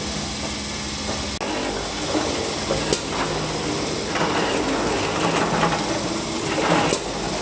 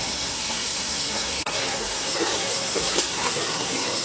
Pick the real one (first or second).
first